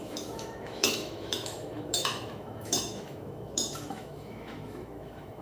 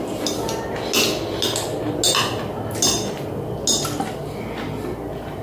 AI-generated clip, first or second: first